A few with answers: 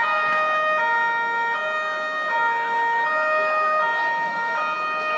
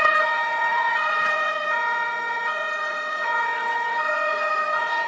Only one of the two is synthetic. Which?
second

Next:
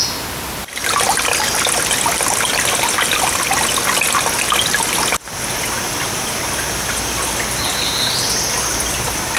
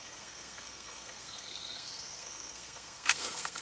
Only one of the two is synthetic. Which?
second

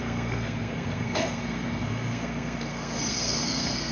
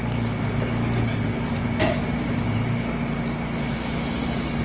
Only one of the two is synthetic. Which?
first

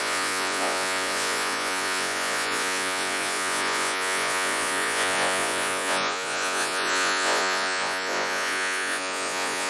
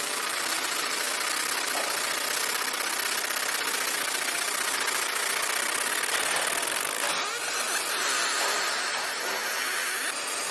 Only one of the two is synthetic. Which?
first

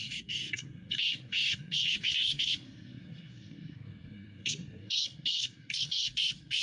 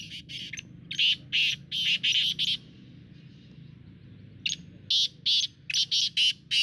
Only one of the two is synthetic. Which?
first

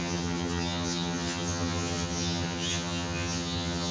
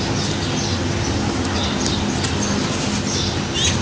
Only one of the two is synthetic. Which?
first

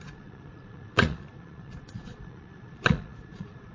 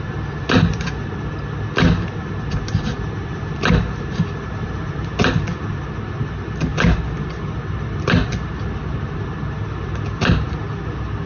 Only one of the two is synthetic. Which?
first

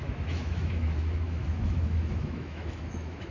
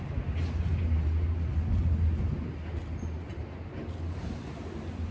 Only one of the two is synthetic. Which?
first